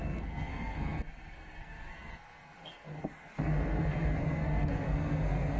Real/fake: fake